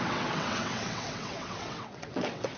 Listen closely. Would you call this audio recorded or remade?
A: remade